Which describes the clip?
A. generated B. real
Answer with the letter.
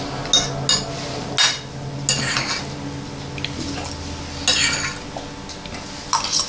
B